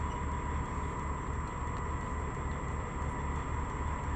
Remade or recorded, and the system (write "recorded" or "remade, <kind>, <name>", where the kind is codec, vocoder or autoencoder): recorded